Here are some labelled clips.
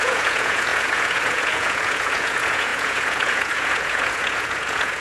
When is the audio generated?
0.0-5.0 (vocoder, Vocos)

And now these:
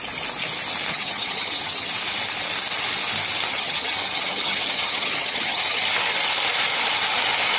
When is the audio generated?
0.9-1.9 (vocoder, HiFi-GAN); 3.5-5.8

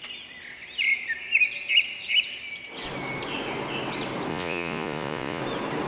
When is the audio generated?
4.3-5.4 (vocoder, Vocos)

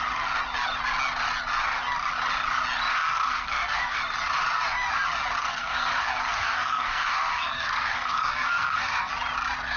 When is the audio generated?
2.9-4.0 (codec, SNAC); 5.4-9.1

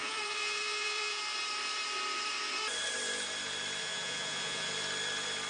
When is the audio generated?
0.0-1.2 (vocoder, Vocos); 3.8-4.7

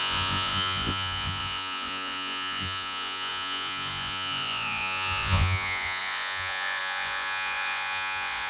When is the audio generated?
0.0-8.5 (vocoder, Vocos)

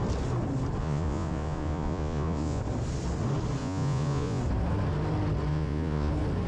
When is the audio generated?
0.8-2.6 (vocoder, Vocos); 3.6-4.4; 5.5-6.1